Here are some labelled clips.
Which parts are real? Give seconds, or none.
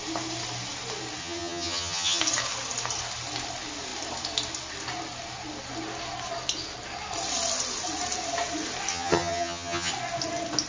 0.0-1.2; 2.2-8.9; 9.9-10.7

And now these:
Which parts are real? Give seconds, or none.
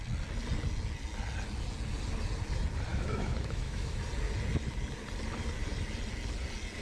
0.0-2.9; 4.0-6.8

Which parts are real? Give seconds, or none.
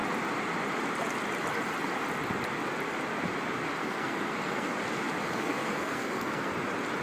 0.0-3.8; 4.7-5.2; 6.5-7.0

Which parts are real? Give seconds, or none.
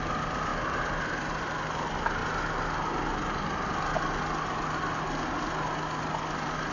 0.0-6.7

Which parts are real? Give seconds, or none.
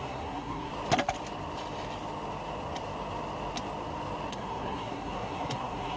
0.7-4.3